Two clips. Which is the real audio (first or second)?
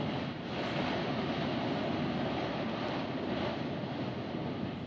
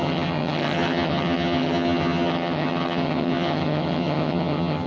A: first